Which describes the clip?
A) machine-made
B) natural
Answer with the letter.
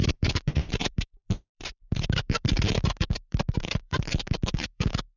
A